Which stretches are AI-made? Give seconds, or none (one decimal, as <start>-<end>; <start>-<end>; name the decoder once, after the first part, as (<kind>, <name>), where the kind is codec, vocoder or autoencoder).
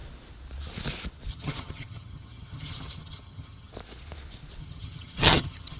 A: 1.3-3.7 (vocoder, HiFi-GAN); 4.6-5.8